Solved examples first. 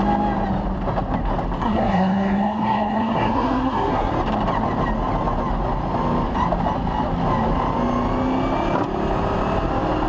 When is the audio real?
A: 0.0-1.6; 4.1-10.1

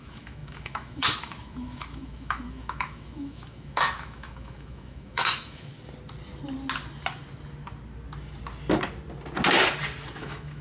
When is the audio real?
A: 5.7-10.2

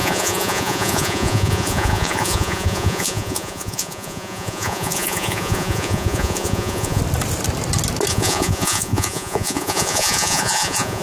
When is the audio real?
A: 7.0-8.1

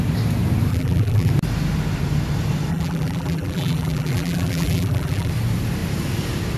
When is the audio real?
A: 0.0-0.7; 1.3-2.7; 5.3-6.6

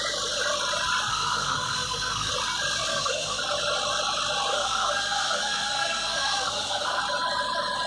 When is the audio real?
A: 0.0-1.1; 2.3-2.9; 3.4-4.5; 7.0-7.9

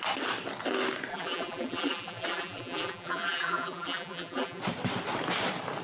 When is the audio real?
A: 0.0-1.1; 4.6-5.8

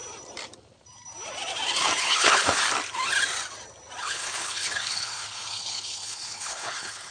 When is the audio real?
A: 0.0-2.0; 2.6-4.0

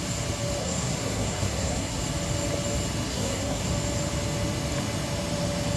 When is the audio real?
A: 0.0-0.6; 2.0-3.1; 3.7-5.8